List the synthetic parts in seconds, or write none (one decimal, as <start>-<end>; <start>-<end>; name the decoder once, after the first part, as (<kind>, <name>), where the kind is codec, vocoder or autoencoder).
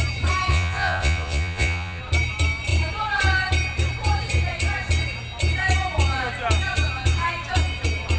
0.5-2.0 (vocoder, Vocos)